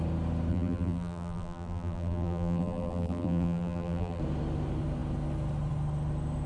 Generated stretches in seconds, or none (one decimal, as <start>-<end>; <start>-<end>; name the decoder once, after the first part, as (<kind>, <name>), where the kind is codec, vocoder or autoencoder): 0.5-4.2 (vocoder, BigVGAN v2)